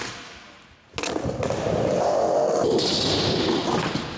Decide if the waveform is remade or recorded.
recorded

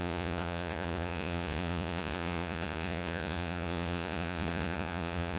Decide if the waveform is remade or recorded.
remade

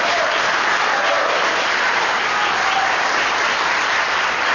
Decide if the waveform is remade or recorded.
recorded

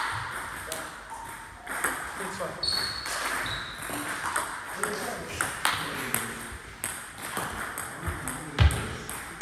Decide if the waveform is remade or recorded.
recorded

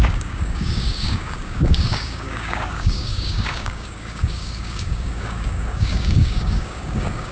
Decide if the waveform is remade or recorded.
remade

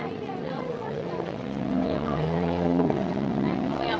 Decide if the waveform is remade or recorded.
remade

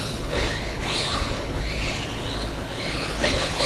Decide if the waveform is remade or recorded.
remade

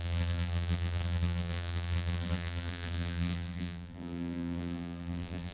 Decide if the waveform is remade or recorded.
remade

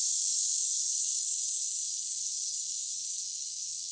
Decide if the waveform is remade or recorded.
remade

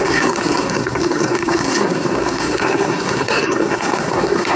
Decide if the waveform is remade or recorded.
remade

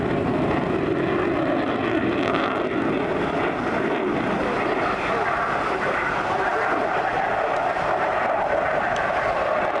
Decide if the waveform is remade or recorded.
recorded